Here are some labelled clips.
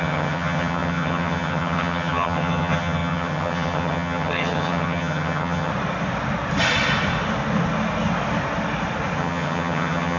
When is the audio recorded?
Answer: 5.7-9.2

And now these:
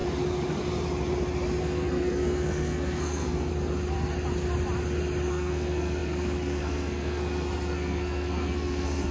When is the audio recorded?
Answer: 0.0-1.6; 3.5-5.3

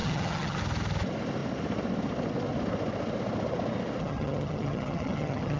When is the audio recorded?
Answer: 0.6-4.0

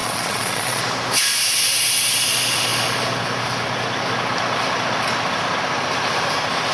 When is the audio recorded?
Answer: 0.8-6.7

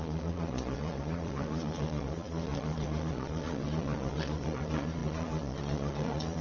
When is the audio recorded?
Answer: none

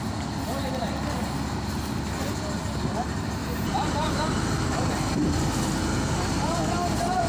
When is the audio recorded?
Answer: 0.0-3.4; 6.6-7.3